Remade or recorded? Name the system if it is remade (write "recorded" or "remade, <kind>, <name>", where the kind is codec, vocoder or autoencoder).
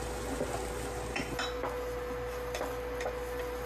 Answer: recorded